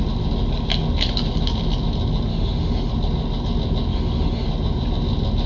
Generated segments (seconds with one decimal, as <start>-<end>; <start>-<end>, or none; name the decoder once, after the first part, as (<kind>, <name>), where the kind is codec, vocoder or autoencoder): 2.3-2.9 (autoencoder, DAC-VAE); 3.9-4.5